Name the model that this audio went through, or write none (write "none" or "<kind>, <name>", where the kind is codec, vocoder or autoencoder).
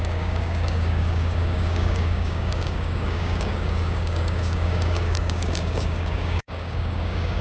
codec, DAC